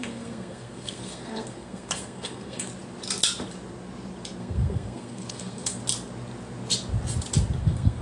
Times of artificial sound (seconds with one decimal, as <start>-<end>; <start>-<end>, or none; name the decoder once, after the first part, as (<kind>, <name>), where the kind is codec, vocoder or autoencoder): 0.0-2.7 (codec, SNAC); 4.4-5.8; 7.6-8.0